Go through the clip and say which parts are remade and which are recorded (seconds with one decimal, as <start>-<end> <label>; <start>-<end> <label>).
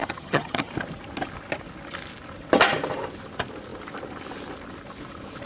0.0-0.7 remade; 0.7-5.5 recorded